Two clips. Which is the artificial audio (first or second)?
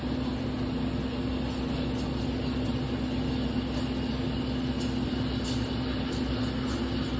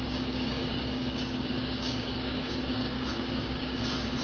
second